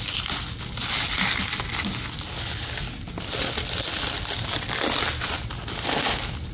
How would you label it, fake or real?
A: real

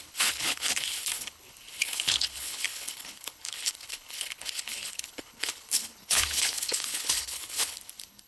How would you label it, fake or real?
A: fake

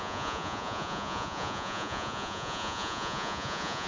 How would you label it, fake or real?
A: fake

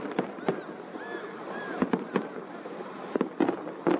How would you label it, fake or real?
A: real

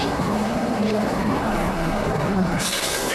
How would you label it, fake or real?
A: fake